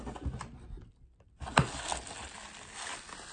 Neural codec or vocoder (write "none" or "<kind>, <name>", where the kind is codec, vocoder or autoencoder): none